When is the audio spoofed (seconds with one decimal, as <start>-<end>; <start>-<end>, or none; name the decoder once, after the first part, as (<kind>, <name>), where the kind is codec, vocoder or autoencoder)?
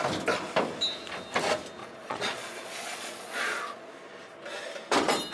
1.8-3.9 (vocoder, Vocos)